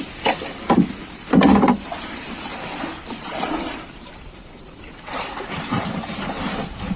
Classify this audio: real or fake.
fake